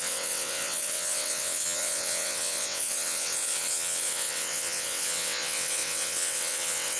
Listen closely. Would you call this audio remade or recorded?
remade